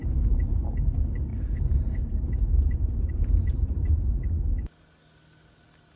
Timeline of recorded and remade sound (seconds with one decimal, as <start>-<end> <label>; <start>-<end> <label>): 0.0-0.7 remade; 0.7-1.3 recorded; 1.3-4.4 remade; 4.4-6.0 recorded